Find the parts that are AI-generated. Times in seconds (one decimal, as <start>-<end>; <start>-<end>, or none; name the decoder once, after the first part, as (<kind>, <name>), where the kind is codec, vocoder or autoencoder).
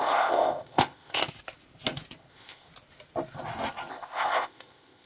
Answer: 0.0-1.2 (codec, ZipCodec); 2.3-2.7; 3.9-5.1